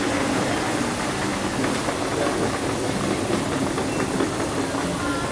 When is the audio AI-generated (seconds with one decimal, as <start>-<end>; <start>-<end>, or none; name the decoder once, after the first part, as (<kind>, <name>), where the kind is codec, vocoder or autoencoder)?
none